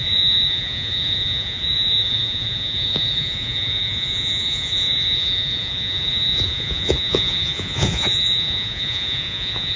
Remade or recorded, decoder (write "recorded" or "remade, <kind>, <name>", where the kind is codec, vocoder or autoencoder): remade, vocoder, Vocos